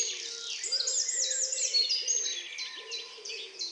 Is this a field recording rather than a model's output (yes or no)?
yes